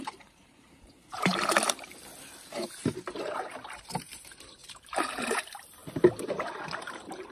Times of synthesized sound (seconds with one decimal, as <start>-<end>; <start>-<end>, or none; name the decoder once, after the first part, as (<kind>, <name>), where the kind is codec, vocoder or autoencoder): 0.0-1.3 (vocoder, BigVGAN v2); 3.4-5.8; 6.5-7.3